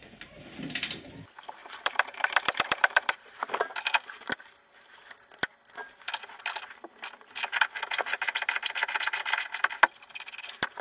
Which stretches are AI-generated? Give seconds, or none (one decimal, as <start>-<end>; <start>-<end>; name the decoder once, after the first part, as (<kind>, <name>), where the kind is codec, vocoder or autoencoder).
0.0-1.1 (vocoder, BigVGAN v2); 1.6-3.4